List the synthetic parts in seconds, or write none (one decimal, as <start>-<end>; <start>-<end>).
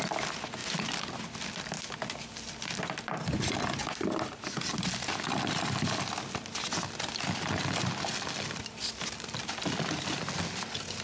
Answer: none